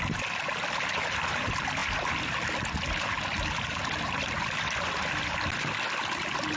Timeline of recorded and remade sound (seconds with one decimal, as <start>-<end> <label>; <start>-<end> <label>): 0.0-6.6 recorded